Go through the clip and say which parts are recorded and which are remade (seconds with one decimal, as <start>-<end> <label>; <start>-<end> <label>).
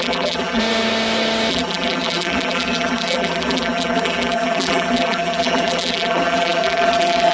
0.0-0.6 remade; 0.6-1.5 recorded; 1.5-7.3 remade